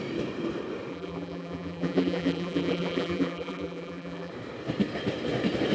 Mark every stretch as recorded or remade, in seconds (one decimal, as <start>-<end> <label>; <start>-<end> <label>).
0.0-0.9 recorded; 0.9-4.3 remade; 4.3-5.7 recorded